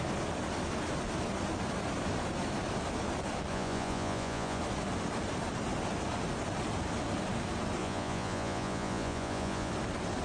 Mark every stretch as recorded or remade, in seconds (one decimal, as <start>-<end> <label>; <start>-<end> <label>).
0.0-3.5 recorded; 3.5-4.6 remade; 4.6-7.8 recorded; 7.8-9.7 remade; 9.7-10.2 recorded